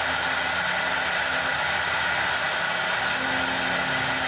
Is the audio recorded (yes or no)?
yes